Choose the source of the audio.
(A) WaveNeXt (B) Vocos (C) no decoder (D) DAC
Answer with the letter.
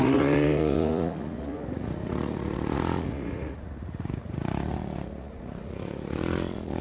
B